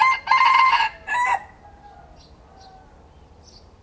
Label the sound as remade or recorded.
recorded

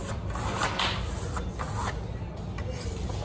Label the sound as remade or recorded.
recorded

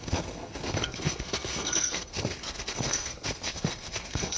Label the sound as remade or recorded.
remade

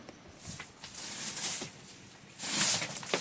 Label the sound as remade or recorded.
recorded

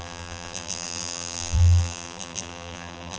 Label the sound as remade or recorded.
remade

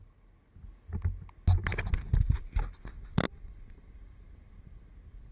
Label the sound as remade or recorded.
recorded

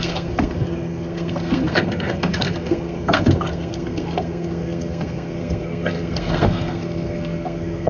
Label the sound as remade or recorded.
remade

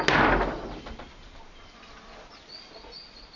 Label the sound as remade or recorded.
recorded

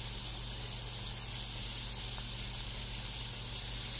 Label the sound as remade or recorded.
recorded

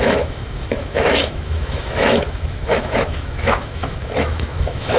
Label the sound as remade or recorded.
remade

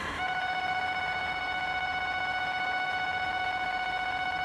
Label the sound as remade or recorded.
remade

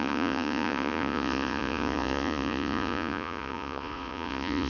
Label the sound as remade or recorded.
remade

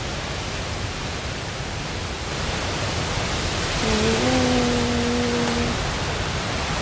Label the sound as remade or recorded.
recorded